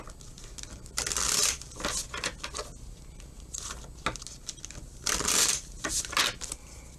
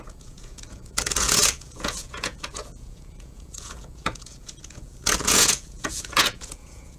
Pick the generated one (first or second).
second